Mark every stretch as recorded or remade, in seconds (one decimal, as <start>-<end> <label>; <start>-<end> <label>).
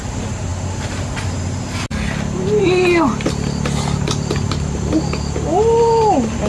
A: 0.0-6.5 recorded